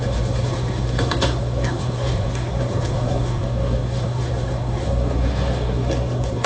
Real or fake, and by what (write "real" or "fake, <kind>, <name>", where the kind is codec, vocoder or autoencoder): fake, codec, SNAC